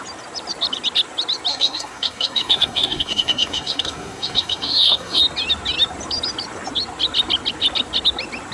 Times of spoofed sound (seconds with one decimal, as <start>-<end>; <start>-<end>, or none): 1.5-5.2